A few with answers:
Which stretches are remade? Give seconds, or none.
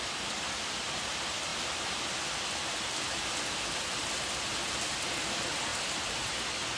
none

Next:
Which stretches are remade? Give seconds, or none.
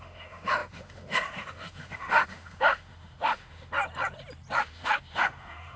0.0-3.7 (autoencoder, DAC-VAE); 4.6-5.8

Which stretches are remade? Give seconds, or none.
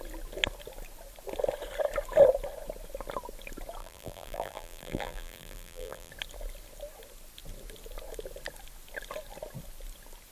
3.8-6.1 (vocoder, BigVGAN v2)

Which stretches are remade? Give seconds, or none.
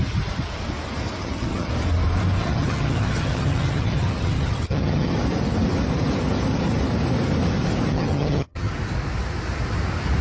1.2-1.7 (vocoder, HiFi-GAN); 2.4-5.1; 7.9-8.7